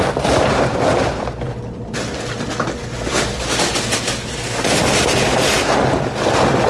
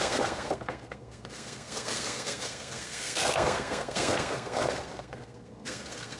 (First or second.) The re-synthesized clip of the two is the second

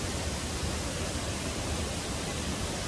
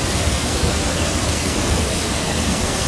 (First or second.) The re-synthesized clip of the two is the second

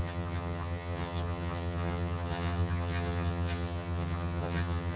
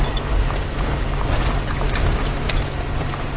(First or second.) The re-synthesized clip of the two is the first